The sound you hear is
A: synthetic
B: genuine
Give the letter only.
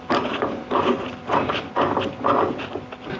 B